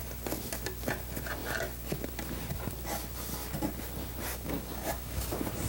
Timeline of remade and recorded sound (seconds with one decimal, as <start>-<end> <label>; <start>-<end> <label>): 0.0-4.3 recorded; 4.3-5.3 remade; 5.3-5.7 recorded